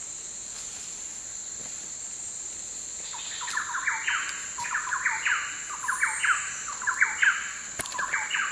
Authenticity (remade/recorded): recorded